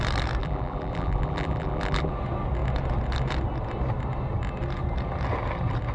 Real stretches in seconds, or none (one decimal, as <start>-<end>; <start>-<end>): 0.0-0.4; 2.1-5.9